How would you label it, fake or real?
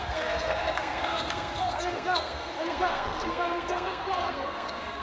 fake